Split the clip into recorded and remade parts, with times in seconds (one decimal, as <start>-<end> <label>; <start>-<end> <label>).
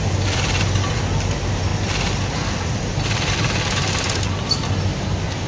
0.0-5.5 recorded